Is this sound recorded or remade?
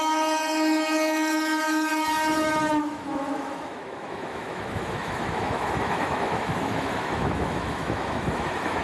remade